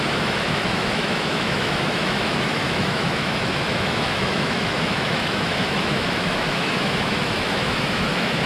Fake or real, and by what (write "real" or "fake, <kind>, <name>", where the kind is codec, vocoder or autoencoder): fake, autoencoder, DAC-VAE